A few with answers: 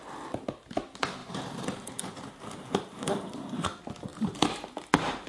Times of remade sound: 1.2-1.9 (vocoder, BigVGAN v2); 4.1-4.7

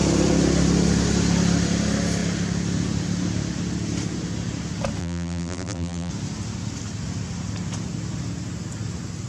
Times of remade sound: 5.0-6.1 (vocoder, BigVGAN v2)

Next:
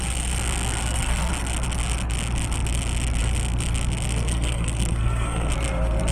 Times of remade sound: 0.8-1.3 (codec, SNAC); 4.3-5.5

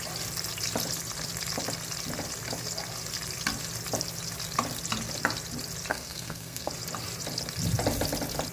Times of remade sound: 5.9-6.7 (codec, SNAC)

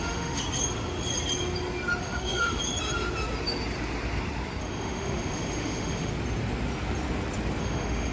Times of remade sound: 0.0-0.4 (autoencoder, DAC-VAE); 2.0-2.6; 4.6-6.1; 7.6-8.1

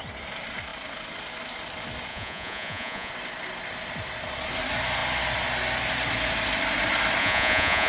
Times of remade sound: 2.1-3.1 (vocoder, Vocos); 7.2-7.9

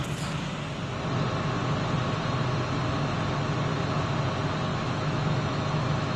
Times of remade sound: 4.7-6.2 (autoencoder, DAC-VAE)

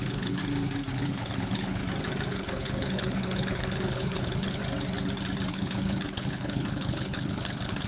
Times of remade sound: 0.0-0.4 (codec, HILCodec); 0.9-1.8; 2.3-4.6; 5.5-7.9